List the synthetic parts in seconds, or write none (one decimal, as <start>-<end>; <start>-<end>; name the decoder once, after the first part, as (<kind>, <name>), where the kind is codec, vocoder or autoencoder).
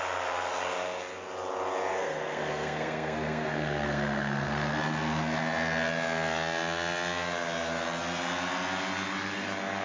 1.9-4.7 (codec, SNAC)